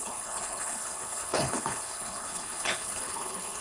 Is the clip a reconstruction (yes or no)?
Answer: yes